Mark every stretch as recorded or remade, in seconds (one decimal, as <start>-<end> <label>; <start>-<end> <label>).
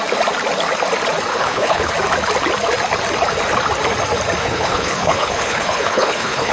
0.0-1.3 recorded; 1.3-1.9 remade; 1.9-4.4 recorded; 4.4-6.5 remade